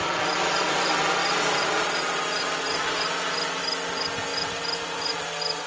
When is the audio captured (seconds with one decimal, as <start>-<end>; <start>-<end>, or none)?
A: 0.0-5.7